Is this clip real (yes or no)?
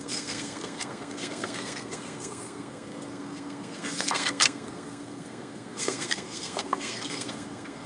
no